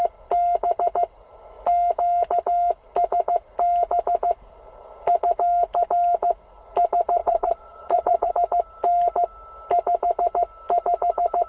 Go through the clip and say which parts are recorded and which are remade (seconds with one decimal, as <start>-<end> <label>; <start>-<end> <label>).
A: 0.0-7.2 recorded; 7.2-8.3 remade; 8.3-11.5 recorded